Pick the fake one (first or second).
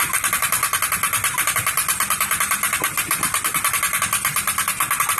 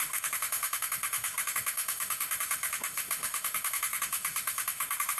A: second